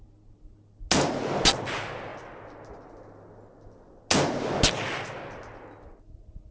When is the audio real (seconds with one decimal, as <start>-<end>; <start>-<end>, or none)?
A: 0.0-6.5